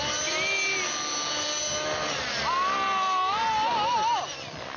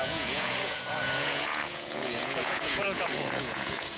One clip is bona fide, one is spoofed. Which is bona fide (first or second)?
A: first